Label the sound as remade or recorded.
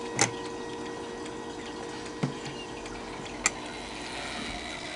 recorded